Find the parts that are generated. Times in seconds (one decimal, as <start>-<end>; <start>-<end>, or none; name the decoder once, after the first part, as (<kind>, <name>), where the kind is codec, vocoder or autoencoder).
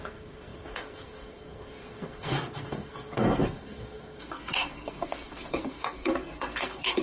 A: 0.0-7.0 (codec, SNAC)